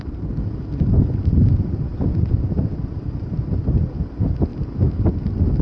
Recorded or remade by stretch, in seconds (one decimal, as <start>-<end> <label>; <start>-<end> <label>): 0.0-5.6 recorded